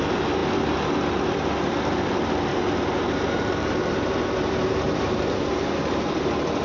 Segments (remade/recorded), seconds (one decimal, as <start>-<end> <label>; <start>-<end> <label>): 0.0-2.5 recorded; 2.5-6.6 remade